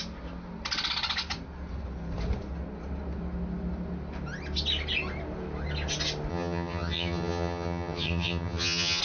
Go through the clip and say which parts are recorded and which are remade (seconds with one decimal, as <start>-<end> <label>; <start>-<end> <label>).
0.0-6.3 recorded; 6.3-9.0 remade

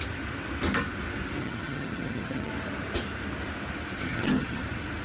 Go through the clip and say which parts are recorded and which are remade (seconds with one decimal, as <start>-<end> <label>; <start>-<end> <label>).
0.0-1.4 recorded; 1.4-2.5 remade; 2.5-4.0 recorded; 4.0-4.6 remade; 4.6-5.0 recorded

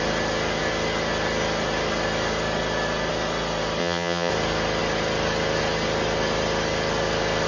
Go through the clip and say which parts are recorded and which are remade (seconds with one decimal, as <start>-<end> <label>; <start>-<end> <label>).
0.0-3.8 recorded; 3.8-4.3 remade; 4.3-7.5 recorded

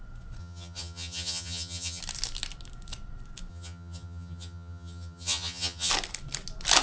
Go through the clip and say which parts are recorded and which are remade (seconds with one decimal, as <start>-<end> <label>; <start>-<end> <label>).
0.0-0.4 recorded; 0.4-2.0 remade; 2.0-3.5 recorded; 3.5-5.9 remade; 5.9-6.8 recorded

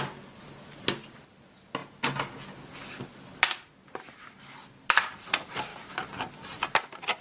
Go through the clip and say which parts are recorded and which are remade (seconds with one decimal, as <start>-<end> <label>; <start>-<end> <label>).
0.0-7.2 recorded

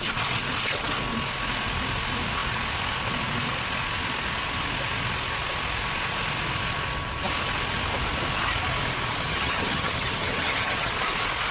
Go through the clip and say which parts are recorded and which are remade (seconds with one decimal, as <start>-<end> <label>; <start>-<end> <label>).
0.0-9.3 recorded; 9.3-10.9 remade; 10.9-11.5 recorded